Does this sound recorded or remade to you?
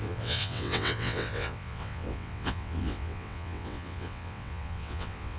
remade